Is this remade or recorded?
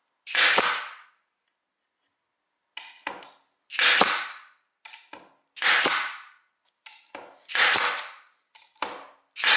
recorded